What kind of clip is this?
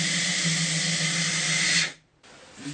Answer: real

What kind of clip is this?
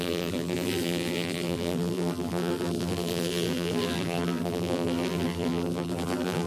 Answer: fake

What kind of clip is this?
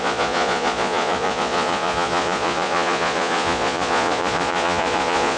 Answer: fake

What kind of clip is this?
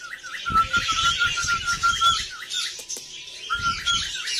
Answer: fake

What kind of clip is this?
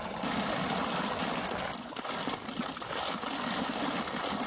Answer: real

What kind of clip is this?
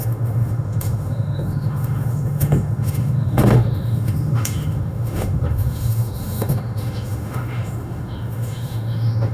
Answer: fake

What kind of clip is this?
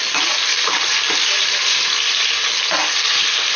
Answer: real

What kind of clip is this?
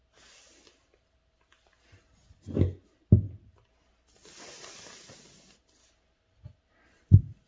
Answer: real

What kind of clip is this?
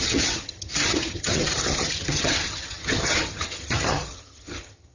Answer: fake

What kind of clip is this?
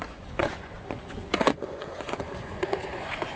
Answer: fake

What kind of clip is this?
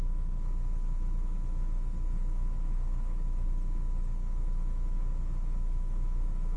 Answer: fake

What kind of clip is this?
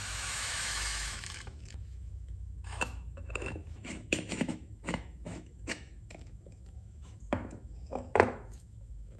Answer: fake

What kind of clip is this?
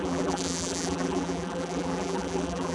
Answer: fake